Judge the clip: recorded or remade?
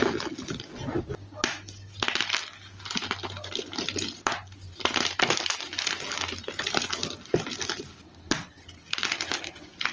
recorded